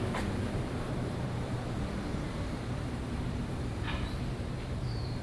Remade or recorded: remade